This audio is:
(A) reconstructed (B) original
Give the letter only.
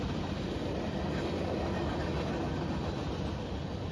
B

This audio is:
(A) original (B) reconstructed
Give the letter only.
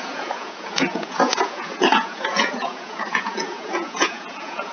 B